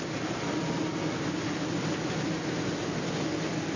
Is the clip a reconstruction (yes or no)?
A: no